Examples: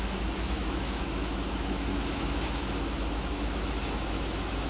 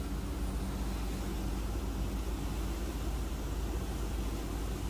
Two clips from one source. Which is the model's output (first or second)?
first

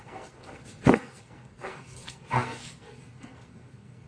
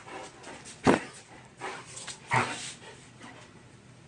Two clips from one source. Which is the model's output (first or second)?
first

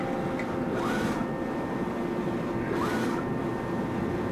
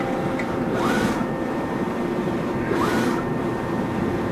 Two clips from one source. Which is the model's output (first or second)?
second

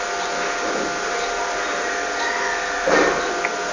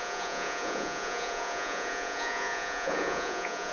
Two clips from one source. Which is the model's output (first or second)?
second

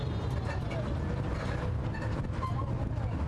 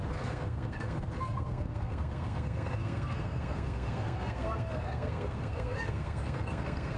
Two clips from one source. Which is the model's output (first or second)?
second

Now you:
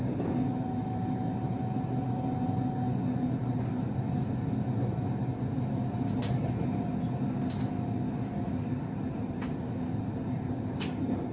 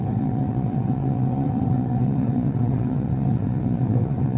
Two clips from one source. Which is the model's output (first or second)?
second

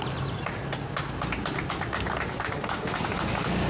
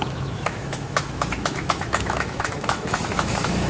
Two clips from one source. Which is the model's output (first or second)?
second